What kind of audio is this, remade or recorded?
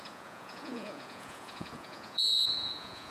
remade